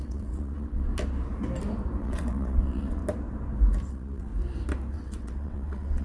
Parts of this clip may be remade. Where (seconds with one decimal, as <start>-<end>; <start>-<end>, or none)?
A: 0.0-0.9; 2.0-3.0; 3.9-4.3; 4.9-6.0